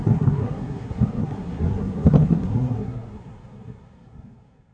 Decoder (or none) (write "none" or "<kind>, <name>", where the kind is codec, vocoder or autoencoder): codec, SNAC